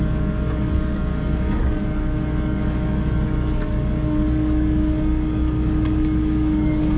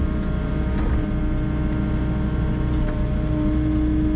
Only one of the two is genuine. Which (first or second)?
second